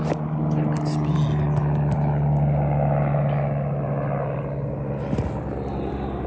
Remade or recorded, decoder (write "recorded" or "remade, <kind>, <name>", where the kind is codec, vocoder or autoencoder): recorded